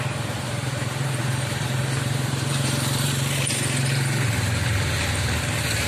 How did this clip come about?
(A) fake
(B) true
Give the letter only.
A